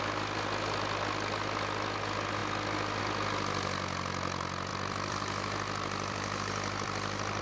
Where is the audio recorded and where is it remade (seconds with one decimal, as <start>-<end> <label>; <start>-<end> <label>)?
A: 0.0-4.7 recorded; 4.7-7.4 remade